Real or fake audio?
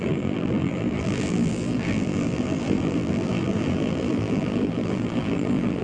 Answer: fake